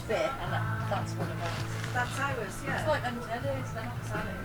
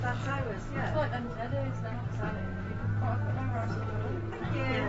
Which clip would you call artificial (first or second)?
first